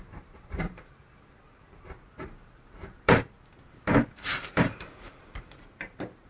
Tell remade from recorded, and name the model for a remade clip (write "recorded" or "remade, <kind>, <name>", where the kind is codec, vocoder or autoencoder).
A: remade, vocoder, BigVGAN v2